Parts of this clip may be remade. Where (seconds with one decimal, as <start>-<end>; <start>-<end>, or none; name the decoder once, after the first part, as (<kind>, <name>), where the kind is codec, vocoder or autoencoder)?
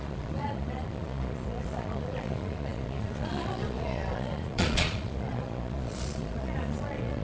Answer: 0.0-7.2 (vocoder, Vocos)